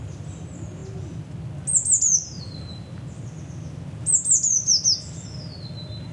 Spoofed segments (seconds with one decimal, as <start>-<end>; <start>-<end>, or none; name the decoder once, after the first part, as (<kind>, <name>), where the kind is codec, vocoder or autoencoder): none